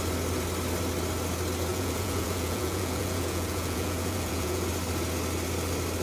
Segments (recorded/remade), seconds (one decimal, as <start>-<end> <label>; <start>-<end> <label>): 0.0-1.7 recorded; 1.7-4.7 remade; 4.7-6.0 recorded